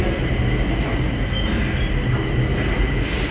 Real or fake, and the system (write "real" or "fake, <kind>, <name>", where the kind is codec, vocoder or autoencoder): real